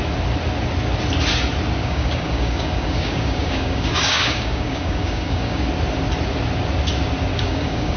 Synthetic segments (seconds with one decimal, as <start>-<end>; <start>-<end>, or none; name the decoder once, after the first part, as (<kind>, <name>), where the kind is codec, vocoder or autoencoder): 1.8-5.7 (codec, DAC); 7.3-8.0